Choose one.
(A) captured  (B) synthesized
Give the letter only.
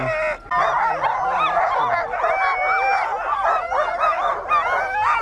A